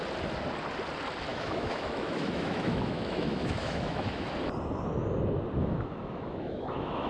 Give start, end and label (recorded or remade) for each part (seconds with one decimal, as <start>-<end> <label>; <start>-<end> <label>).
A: 0.0-1.3 recorded; 1.3-4.3 remade; 4.3-5.6 recorded; 5.6-7.1 remade